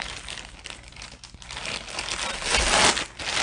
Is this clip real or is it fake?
real